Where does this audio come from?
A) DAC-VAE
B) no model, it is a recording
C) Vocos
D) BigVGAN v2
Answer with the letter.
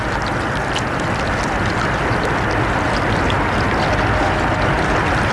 B